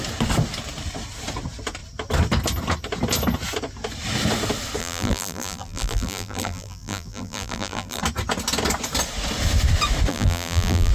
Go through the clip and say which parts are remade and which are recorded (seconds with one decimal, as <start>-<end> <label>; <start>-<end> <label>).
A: 0.0-4.8 recorded; 4.8-8.0 remade; 8.0-10.1 recorded; 10.1-10.9 remade